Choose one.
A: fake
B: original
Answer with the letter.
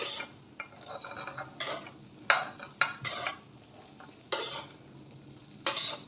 B